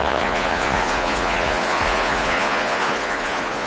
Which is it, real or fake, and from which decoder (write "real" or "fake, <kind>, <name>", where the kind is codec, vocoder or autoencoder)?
fake, vocoder, Vocos